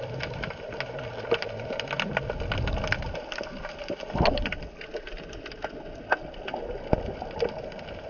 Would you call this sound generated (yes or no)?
no